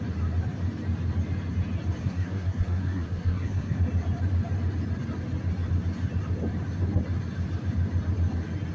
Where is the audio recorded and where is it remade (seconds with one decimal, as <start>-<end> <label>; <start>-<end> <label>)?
0.0-2.0 recorded; 2.0-3.8 remade; 3.8-8.7 recorded